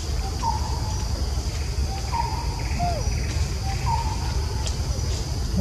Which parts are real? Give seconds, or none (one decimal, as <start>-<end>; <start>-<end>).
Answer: 1.0-1.8; 2.8-5.6